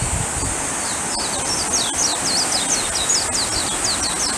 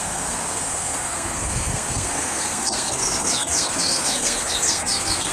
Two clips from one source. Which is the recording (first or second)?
first